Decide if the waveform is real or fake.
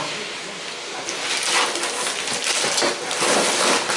real